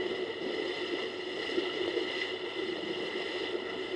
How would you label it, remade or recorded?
recorded